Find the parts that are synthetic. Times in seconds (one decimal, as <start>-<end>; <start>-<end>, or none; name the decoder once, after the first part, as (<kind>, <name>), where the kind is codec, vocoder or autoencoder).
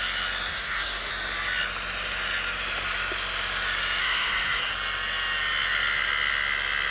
0.5-1.1 (codec, SNAC); 4.0-4.7